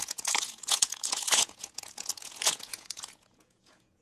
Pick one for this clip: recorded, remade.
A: remade